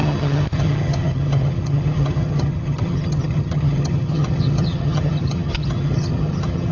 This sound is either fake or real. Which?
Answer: fake